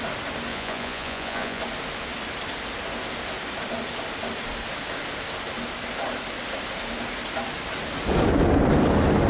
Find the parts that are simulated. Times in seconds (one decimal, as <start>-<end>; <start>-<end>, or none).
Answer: 0.5-1.6